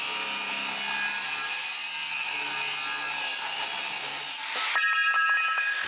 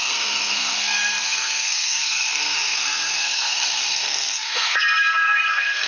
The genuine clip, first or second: first